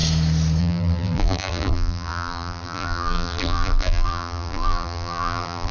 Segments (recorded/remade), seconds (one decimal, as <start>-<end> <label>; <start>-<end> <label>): 0.0-0.6 recorded; 0.6-5.7 remade